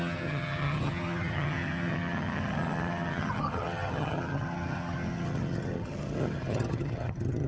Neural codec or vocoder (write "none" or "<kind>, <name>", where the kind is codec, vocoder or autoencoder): vocoder, HiFi-GAN